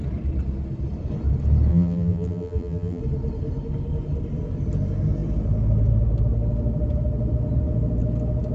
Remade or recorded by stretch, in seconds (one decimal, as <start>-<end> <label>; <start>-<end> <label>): 0.0-1.7 recorded; 1.7-3.0 remade; 3.0-8.5 recorded